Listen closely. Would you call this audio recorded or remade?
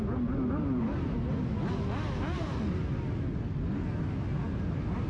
recorded